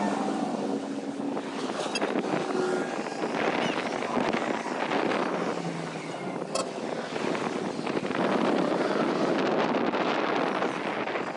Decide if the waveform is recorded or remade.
recorded